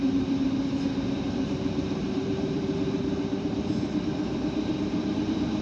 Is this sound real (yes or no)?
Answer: no